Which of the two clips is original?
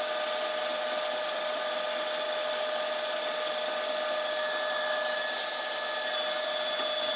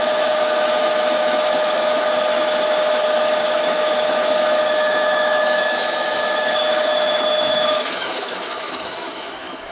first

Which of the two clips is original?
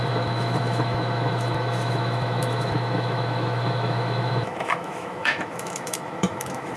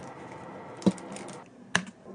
second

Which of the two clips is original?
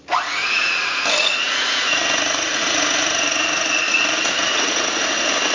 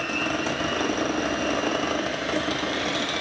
second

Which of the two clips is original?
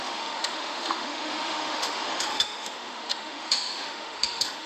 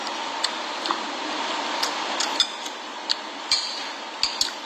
second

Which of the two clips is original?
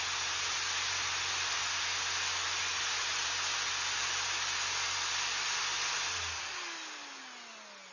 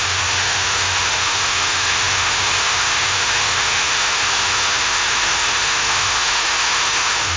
first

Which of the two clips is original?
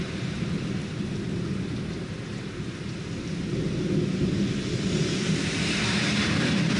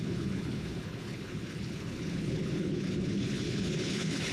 first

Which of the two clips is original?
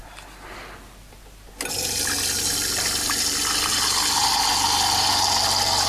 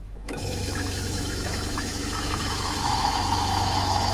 first